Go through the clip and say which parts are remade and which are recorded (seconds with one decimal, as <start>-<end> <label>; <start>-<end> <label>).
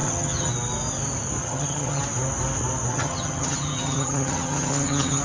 0.0-0.5 remade; 0.5-1.4 recorded; 1.4-2.0 remade; 2.0-2.9 recorded; 2.9-5.2 remade